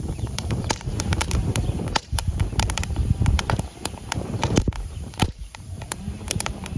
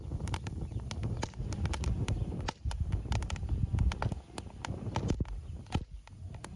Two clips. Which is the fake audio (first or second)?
first